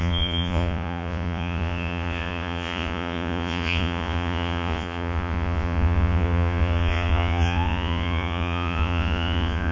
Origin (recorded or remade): remade